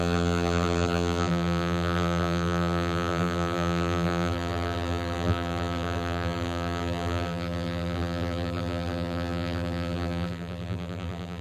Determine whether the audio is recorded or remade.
remade